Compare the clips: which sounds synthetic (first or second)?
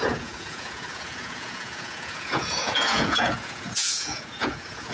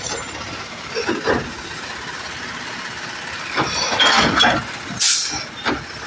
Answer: first